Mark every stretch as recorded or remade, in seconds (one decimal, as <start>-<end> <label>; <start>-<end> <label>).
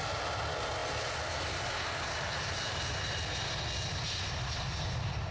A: 0.0-5.3 recorded